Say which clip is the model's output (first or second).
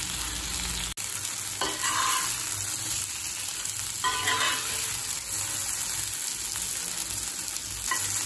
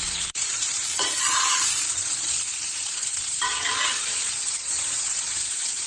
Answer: second